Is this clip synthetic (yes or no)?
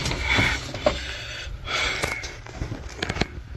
no